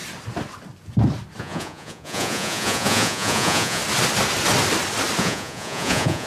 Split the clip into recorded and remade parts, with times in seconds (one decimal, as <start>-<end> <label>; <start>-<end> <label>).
0.0-1.4 recorded; 1.4-3.8 remade; 3.8-5.2 recorded; 5.2-6.3 remade